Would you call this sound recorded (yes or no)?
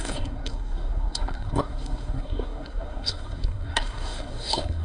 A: no